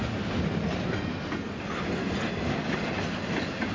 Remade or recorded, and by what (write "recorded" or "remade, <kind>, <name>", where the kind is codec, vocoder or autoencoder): recorded